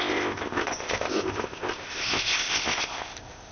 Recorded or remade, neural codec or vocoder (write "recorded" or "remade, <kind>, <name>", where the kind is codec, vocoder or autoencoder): remade, codec, ZipCodec